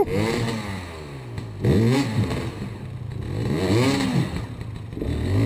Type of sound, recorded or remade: recorded